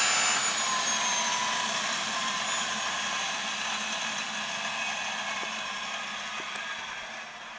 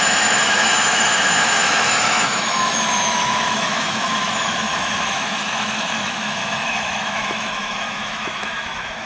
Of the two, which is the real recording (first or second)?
first